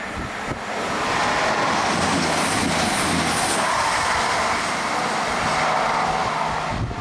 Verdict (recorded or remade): recorded